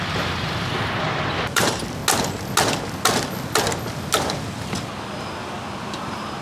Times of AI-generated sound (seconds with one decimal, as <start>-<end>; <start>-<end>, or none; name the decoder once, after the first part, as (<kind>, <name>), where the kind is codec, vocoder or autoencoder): 0.0-2.0 (vocoder, BigVGAN v2); 5.8-6.4